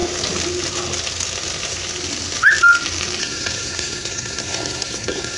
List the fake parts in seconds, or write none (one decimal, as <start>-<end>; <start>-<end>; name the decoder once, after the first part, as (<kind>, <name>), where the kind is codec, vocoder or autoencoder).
3.2-5.4 (codec, SNAC)